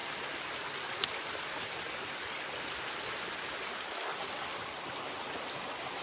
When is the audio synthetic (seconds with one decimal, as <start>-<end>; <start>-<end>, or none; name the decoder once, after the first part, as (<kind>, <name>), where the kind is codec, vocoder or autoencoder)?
none

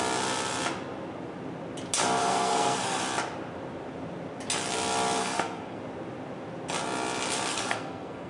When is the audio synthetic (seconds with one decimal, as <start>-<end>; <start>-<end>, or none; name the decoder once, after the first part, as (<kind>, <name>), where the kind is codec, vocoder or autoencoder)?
2.2-3.0 (codec, SNAC); 5.2-5.8; 7.5-8.3

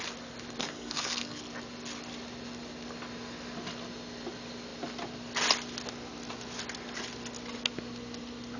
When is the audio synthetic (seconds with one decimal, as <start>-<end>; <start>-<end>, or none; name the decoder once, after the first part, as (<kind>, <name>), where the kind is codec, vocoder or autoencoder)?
0.6-1.4 (codec, SNAC)

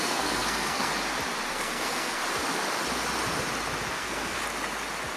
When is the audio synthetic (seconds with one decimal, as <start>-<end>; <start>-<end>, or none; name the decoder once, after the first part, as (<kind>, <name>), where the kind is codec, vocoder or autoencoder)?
0.0-0.9 (codec, SNAC); 1.5-2.2; 3.9-4.4